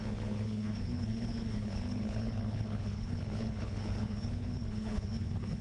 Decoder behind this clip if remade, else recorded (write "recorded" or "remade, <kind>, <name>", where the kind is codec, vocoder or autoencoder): remade, codec, HILCodec